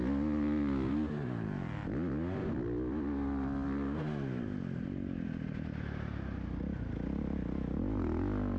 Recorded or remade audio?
recorded